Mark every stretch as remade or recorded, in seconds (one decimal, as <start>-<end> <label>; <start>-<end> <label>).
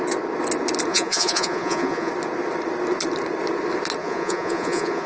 0.0-0.9 recorded; 0.9-2.1 remade; 2.1-4.0 recorded; 4.0-5.1 remade